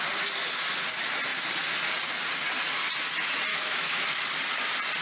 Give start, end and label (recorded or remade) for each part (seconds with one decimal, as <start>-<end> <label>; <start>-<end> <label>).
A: 0.0-3.5 recorded; 3.5-4.0 remade; 4.0-5.0 recorded

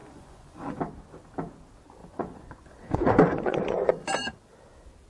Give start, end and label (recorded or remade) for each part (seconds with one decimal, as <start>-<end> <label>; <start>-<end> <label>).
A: 0.0-0.8 remade; 0.8-2.0 recorded; 2.0-3.9 remade; 3.9-5.1 recorded

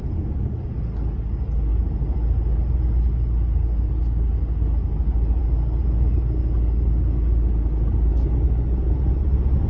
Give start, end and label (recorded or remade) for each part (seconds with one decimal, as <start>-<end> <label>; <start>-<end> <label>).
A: 0.0-9.7 recorded

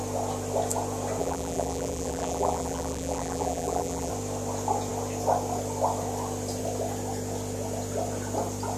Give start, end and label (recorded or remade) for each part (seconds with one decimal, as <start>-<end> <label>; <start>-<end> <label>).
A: 0.0-1.2 recorded; 1.2-4.1 remade; 4.1-8.8 recorded

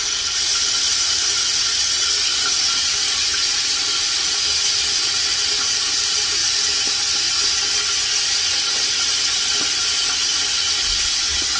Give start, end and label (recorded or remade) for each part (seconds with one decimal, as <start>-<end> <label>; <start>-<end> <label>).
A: 0.0-11.6 recorded